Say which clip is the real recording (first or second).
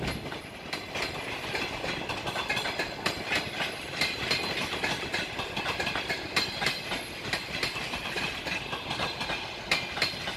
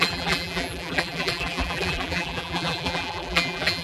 first